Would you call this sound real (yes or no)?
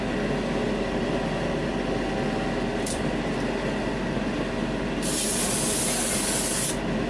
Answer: yes